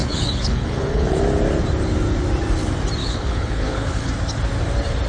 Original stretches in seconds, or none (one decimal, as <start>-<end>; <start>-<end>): 1.2-3.0; 4.1-5.1

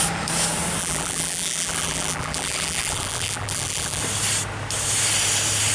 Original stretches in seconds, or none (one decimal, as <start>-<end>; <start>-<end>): 0.0-0.8; 4.0-5.7

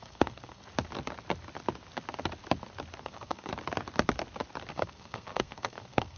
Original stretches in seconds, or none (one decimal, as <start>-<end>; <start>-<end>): 0.6-3.0; 3.5-4.7

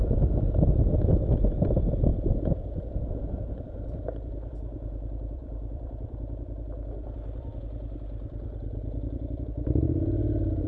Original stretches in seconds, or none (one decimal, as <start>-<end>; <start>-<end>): 1.1-1.6; 2.1-3.5